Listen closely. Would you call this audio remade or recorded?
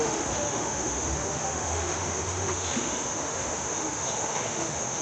remade